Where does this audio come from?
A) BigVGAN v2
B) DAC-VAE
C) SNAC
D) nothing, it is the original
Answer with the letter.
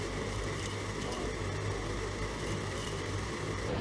A